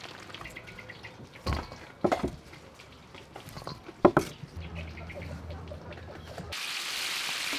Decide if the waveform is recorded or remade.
recorded